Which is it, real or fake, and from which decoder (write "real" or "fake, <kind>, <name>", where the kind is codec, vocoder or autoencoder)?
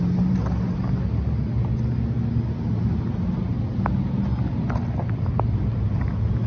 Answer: real